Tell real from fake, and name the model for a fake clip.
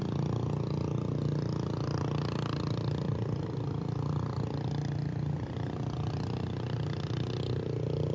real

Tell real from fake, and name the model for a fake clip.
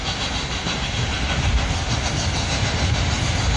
real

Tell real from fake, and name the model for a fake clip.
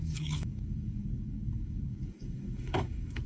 fake, codec, DAC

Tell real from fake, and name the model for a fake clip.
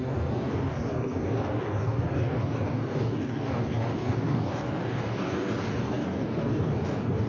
fake, codec, DAC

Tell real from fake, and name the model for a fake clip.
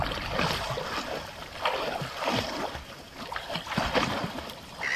real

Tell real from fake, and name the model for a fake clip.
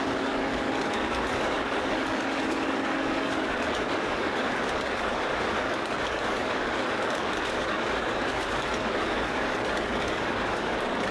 fake, codec, DAC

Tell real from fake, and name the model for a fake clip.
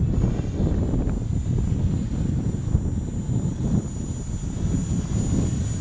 real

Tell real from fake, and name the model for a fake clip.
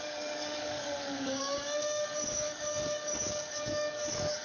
fake, codec, DAC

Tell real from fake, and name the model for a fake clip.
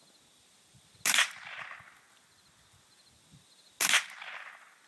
real